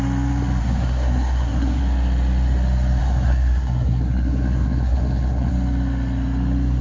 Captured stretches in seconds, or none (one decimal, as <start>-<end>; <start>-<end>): 0.0-0.6; 1.8-3.0; 5.5-6.8